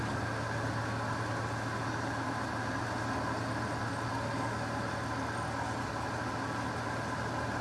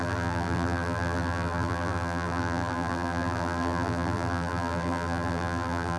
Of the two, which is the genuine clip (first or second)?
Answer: first